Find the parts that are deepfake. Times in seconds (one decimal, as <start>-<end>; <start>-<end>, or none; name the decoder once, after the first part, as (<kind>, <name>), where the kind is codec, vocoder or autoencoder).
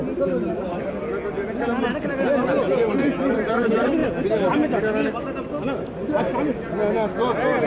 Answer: none